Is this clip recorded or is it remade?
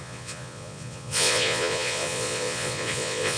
remade